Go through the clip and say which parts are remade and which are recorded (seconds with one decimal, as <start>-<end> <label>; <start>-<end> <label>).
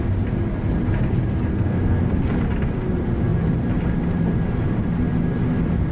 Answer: 0.0-1.5 recorded; 1.5-2.1 remade; 2.1-5.9 recorded